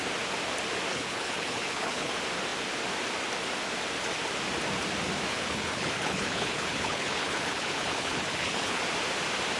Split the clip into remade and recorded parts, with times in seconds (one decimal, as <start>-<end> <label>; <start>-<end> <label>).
0.0-0.9 recorded; 0.9-2.1 remade; 2.1-5.3 recorded; 5.3-8.8 remade; 8.8-9.6 recorded